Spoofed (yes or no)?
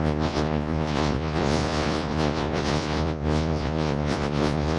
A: yes